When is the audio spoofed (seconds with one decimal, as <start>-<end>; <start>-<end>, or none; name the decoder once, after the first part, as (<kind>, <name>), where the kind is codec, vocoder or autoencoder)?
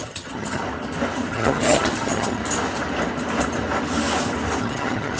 0.0-0.6 (vocoder, HiFi-GAN); 1.3-2.4; 4.6-5.2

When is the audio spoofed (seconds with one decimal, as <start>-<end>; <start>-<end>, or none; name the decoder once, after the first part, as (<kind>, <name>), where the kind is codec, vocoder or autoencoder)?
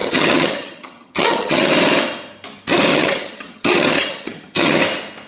0.0-1.7 (vocoder, HiFi-GAN); 2.9-4.8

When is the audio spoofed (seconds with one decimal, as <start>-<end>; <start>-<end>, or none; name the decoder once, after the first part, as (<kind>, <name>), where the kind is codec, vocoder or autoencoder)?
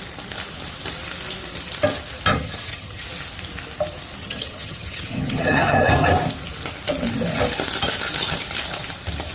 2.3-3.0 (vocoder, HiFi-GAN); 4.2-5.9